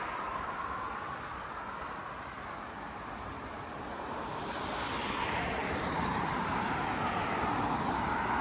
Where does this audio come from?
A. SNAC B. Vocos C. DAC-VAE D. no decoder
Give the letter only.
D